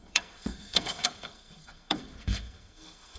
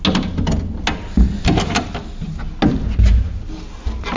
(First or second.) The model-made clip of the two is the first